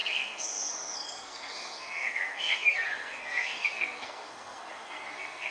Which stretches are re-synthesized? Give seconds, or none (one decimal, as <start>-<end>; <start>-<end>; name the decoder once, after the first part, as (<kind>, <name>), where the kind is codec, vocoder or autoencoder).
0.0-5.5 (codec, SNAC)